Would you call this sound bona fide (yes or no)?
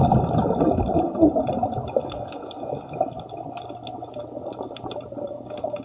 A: yes